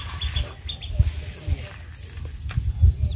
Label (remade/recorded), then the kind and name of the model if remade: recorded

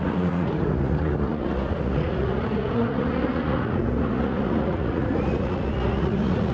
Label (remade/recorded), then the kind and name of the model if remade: remade, vocoder, Vocos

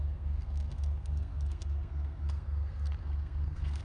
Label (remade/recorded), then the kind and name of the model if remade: remade, codec, SNAC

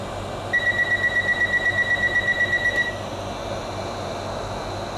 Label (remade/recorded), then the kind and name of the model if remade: recorded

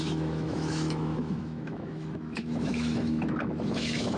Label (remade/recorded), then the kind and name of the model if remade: remade, autoencoder, DAC-VAE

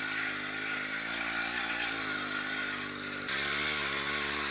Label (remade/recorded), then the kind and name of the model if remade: recorded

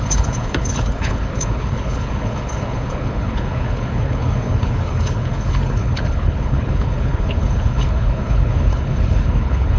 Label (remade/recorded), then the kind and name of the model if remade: remade, codec, HILCodec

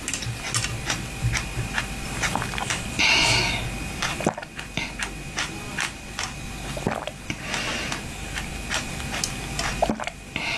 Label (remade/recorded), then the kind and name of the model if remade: recorded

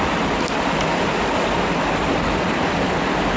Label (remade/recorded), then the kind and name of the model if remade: recorded